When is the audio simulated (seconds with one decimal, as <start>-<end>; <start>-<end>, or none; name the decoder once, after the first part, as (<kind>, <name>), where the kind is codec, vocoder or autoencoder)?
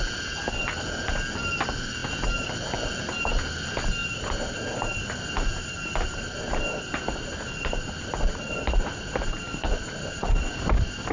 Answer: none